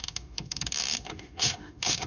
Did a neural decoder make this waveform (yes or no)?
yes